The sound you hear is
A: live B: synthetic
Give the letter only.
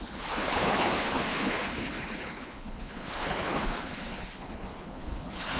B